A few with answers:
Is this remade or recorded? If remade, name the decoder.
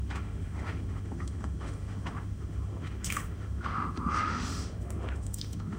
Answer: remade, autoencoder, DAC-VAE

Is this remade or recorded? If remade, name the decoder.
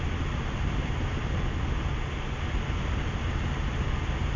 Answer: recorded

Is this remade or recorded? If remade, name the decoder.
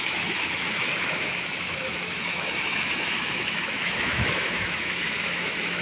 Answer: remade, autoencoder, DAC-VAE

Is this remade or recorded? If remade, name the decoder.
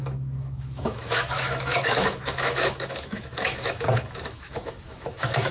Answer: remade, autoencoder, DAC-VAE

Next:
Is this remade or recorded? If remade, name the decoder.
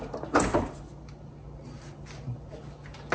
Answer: recorded